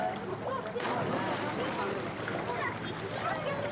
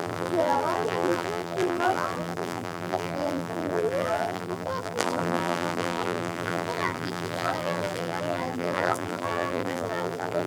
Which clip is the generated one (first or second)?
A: second